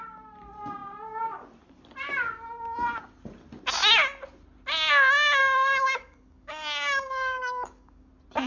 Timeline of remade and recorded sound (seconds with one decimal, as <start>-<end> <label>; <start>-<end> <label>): 0.0-5.4 recorded; 5.4-8.1 remade; 8.1-8.5 recorded